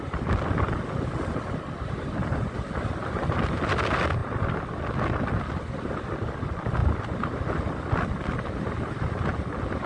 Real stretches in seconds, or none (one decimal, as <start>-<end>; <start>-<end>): 0.0-9.9